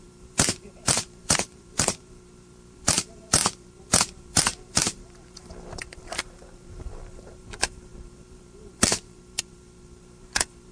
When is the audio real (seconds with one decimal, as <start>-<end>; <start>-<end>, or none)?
none